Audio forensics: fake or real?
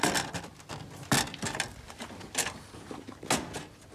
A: real